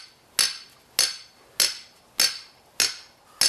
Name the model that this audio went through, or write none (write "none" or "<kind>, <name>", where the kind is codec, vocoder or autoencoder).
none